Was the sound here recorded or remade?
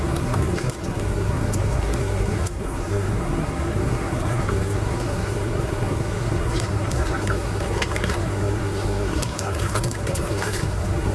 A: remade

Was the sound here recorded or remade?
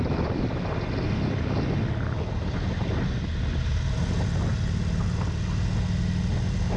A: recorded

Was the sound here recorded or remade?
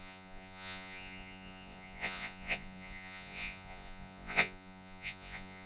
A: remade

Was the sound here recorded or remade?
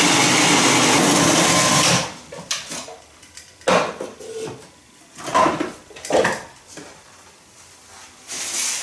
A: recorded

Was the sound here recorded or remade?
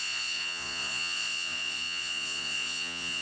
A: remade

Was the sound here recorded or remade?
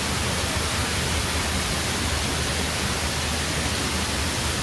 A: recorded